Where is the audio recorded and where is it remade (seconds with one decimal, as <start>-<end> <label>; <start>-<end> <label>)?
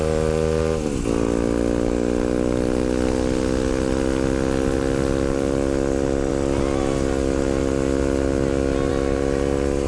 0.0-9.9 recorded